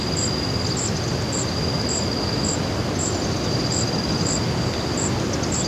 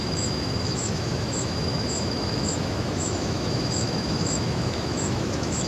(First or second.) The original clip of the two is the first